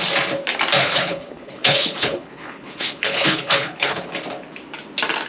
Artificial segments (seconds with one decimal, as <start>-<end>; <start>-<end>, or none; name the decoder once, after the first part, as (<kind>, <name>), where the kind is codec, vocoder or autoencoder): 0.8-4.0 (codec, HILCodec)